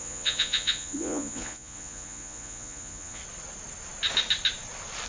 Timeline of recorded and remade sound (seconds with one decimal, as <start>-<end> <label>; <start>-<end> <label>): 0.0-3.2 remade; 3.2-5.1 recorded